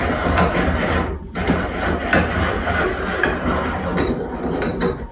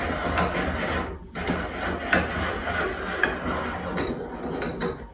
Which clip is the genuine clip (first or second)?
second